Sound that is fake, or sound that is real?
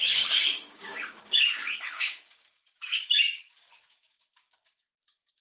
fake